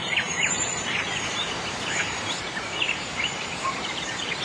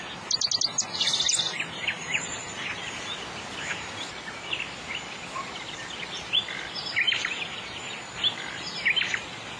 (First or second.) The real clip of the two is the second